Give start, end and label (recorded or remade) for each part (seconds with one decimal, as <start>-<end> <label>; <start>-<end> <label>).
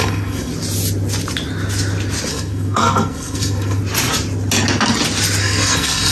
0.0-0.5 remade; 0.5-2.3 recorded; 2.3-3.8 remade; 3.8-5.4 recorded; 5.4-6.1 remade